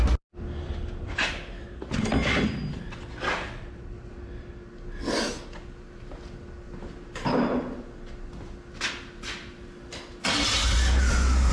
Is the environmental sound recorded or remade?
recorded